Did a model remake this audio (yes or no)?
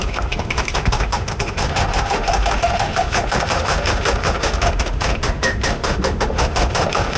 yes